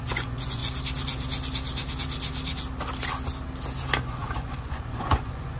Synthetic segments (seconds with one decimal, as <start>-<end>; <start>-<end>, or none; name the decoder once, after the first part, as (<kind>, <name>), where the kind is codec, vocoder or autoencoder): 0.0-0.6 (vocoder, Vocos); 4.0-5.6